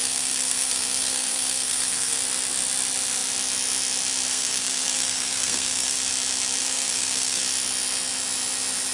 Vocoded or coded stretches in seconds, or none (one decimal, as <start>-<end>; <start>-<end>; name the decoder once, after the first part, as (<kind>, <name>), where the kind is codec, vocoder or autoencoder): 0.0-2.2 (codec, SNAC); 4.3-6.0; 6.6-7.4